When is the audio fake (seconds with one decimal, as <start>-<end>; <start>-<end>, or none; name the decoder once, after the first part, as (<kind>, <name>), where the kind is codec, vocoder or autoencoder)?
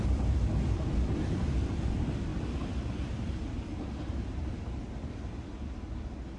3.7-4.6 (vocoder, BigVGAN v2)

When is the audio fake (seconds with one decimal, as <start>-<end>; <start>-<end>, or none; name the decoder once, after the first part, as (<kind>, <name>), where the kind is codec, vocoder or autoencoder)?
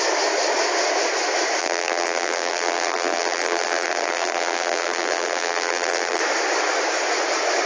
1.6-6.2 (vocoder, BigVGAN v2)